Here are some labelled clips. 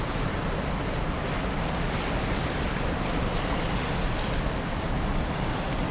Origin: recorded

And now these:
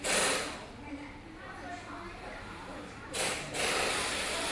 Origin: remade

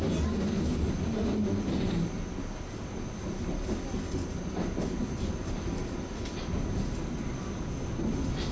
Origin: recorded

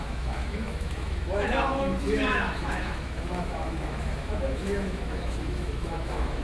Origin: remade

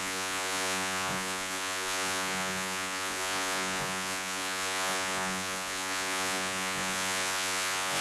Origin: remade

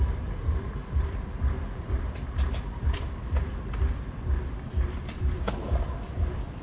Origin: remade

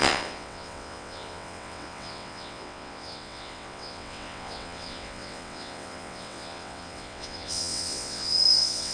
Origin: remade